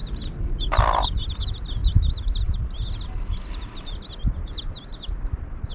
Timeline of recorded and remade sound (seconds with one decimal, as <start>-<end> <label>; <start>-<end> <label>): 0.0-5.7 recorded